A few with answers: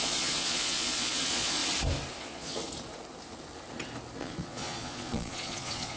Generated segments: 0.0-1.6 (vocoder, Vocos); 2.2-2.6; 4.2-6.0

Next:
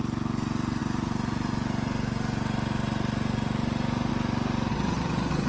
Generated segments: 4.7-5.5 (vocoder, HiFi-GAN)